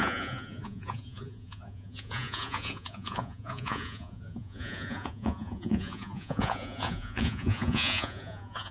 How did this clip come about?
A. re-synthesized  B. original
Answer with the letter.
A